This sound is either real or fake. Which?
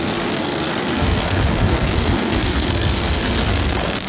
fake